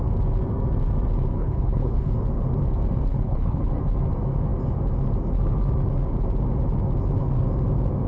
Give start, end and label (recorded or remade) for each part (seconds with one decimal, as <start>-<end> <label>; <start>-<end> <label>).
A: 0.0-1.4 recorded; 1.4-2.1 remade; 2.1-3.1 recorded; 3.1-3.6 remade; 3.6-8.1 recorded